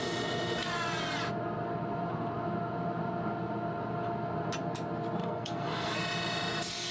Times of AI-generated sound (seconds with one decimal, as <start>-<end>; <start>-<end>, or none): 5.2-6.0